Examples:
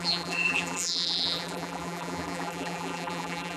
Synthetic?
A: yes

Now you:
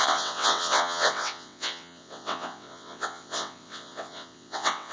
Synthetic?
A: yes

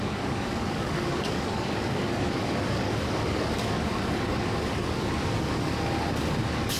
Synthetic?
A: yes